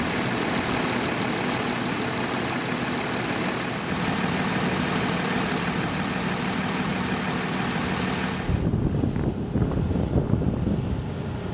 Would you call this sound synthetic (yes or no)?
no